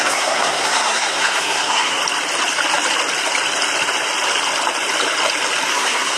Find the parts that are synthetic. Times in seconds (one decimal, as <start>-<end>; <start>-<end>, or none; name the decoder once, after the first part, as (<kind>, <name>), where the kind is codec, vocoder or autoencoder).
0.0-2.0 (codec, SNAC); 5.7-6.2